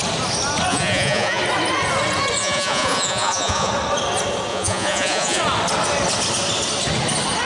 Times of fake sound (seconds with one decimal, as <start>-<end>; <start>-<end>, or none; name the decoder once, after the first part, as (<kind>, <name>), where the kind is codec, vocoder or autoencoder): 0.7-1.4 (vocoder, Vocos); 2.4-3.7; 4.5-5.4